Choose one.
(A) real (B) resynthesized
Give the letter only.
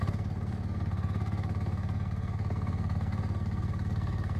B